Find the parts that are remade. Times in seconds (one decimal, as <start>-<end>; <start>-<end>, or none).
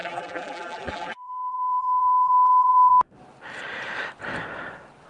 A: 0.0-2.9